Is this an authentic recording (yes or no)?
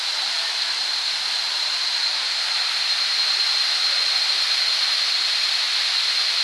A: yes